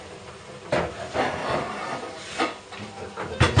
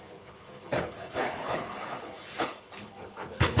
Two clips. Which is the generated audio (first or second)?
second